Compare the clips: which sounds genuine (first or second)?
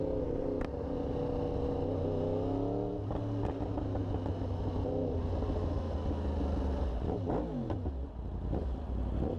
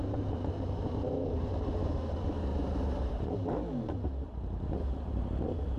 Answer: first